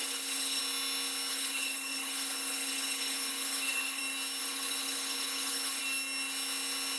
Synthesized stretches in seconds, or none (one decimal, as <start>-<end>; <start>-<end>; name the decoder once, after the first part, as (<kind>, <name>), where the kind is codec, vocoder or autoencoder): 0.0-0.6 (codec, HILCodec); 1.3-4.0; 4.4-5.8